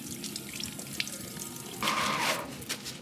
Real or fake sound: real